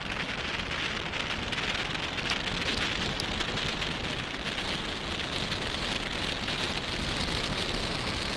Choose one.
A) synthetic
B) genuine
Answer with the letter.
B